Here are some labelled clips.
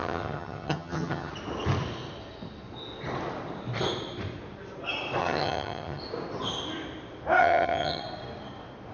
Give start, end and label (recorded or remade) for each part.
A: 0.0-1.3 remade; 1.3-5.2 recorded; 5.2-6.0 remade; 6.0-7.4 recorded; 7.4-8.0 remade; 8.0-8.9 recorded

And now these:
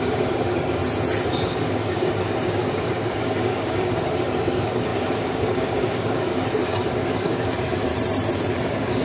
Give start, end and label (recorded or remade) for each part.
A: 0.0-0.8 remade; 0.8-1.3 recorded; 1.3-7.9 remade; 7.9-8.5 recorded; 8.5-9.0 remade